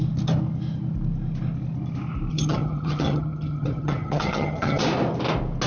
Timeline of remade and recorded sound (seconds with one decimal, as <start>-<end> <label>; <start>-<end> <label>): 0.0-2.3 recorded; 2.3-4.8 remade; 4.8-5.7 recorded